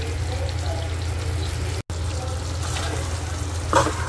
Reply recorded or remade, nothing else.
recorded